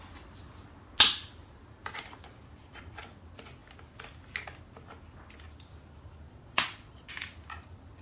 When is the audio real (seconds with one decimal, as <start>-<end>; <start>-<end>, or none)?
0.0-2.6; 3.1-6.3; 7.1-8.0